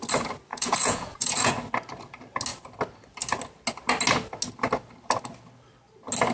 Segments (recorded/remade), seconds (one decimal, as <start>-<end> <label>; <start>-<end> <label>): 0.0-0.5 recorded; 0.5-1.5 remade; 1.5-6.3 recorded